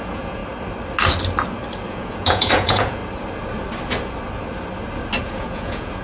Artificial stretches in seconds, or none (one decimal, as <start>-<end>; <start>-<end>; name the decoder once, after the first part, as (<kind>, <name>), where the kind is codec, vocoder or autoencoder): 0.0-0.4 (vocoder, Vocos); 1.9-3.0; 5.2-6.0